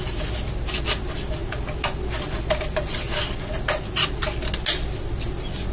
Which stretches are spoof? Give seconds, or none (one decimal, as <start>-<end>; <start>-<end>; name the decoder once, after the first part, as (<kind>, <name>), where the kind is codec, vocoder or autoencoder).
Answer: none